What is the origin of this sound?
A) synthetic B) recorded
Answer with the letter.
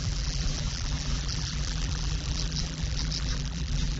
A